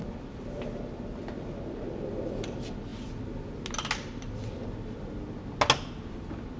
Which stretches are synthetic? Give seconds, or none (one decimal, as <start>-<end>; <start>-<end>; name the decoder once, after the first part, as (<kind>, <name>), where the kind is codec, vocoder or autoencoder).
none